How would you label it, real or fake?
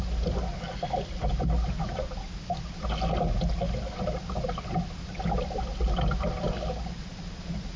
real